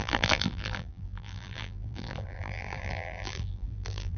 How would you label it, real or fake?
fake